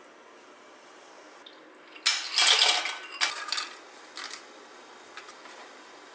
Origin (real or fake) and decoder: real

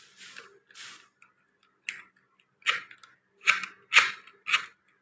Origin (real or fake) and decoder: real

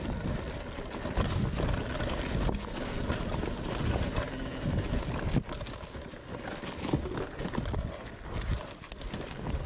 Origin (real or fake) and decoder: real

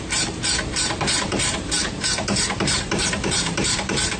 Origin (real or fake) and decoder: fake, vocoder, BigVGAN v2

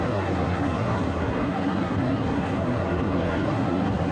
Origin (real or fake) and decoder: fake, codec, SNAC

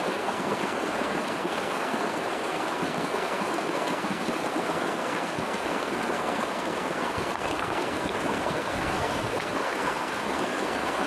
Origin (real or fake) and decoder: fake, codec, SNAC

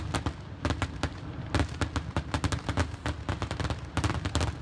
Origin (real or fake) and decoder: real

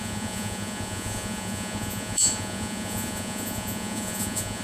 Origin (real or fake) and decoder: fake, vocoder, Vocos